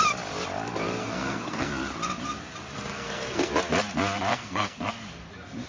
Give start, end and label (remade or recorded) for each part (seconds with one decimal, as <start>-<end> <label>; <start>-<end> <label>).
0.0-1.0 recorded; 1.0-1.7 remade; 1.7-2.9 recorded; 2.9-3.5 remade; 3.5-4.3 recorded; 4.3-4.9 remade; 4.9-5.7 recorded